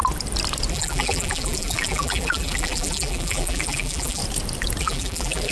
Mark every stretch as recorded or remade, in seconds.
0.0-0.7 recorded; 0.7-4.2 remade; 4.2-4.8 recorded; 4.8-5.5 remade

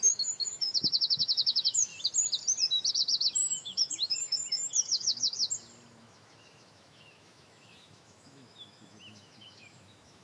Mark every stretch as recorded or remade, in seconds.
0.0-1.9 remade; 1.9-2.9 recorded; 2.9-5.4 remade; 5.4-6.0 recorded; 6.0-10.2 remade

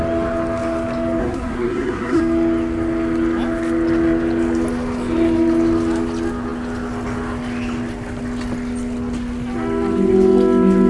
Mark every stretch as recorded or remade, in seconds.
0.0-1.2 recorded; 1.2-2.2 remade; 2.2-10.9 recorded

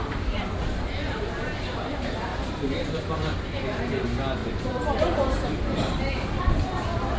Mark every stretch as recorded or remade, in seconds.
0.0-2.3 recorded; 2.3-4.0 remade; 4.0-4.4 recorded; 4.4-7.2 remade

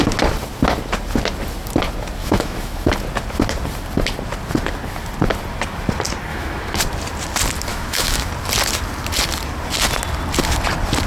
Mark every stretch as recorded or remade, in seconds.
0.0-2.2 recorded; 2.2-2.9 remade; 2.9-6.3 recorded; 6.3-6.8 remade; 6.8-7.7 recorded; 7.7-8.3 remade; 8.3-11.1 recorded

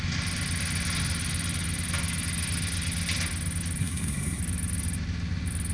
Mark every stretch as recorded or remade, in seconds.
0.0-3.8 recorded; 3.8-4.4 remade; 4.4-5.7 recorded